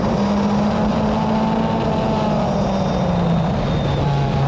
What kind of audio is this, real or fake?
real